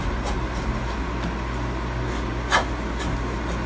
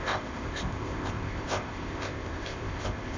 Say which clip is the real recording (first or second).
first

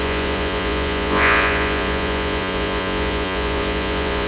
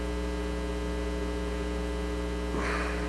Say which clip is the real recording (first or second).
second